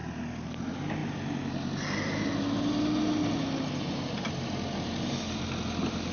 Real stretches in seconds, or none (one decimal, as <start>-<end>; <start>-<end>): 0.0-6.1

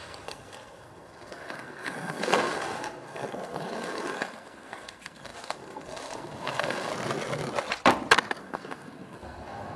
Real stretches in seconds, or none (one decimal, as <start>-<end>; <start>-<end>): 6.9-8.4

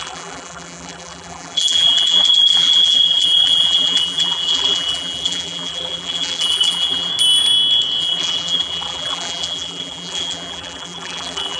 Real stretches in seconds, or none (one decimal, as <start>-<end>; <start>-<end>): 7.1-8.0